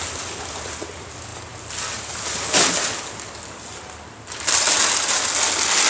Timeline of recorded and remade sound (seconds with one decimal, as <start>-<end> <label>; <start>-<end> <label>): 0.0-5.9 recorded